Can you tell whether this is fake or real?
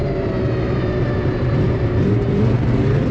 fake